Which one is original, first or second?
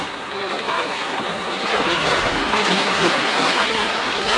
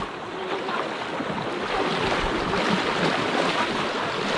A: second